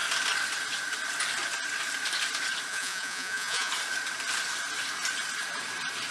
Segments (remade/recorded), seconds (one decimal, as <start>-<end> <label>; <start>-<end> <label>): 0.0-2.7 recorded; 2.7-3.7 remade; 3.7-6.1 recorded